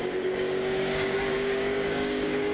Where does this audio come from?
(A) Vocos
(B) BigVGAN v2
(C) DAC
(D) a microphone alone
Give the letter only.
C